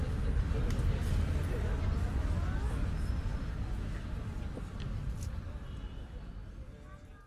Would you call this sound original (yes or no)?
yes